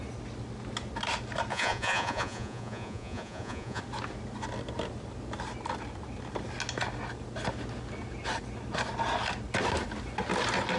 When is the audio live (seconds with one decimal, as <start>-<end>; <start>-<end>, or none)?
0.0-1.5; 3.8-10.8